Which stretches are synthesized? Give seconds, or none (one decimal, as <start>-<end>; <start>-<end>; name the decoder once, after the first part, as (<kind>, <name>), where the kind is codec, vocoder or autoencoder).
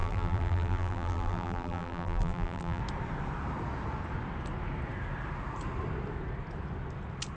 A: 0.0-2.8 (vocoder, BigVGAN v2)